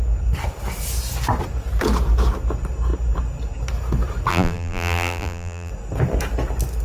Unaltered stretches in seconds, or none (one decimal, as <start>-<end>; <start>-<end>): 0.0-4.3; 5.7-6.8